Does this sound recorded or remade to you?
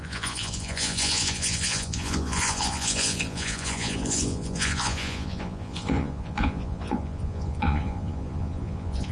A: remade